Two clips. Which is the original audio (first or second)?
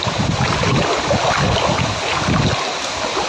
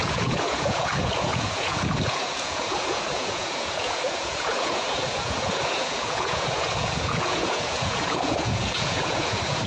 first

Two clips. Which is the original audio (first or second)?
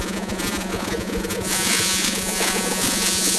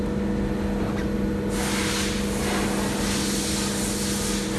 second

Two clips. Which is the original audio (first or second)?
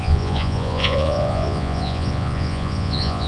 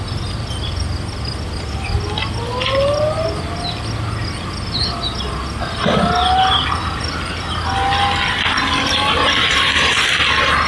second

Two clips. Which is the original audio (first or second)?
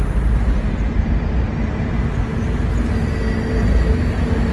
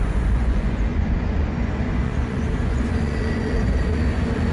first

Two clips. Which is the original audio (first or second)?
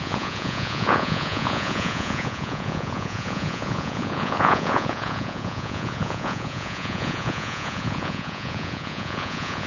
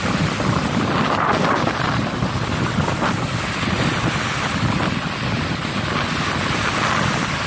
second